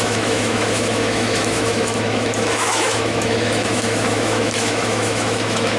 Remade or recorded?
remade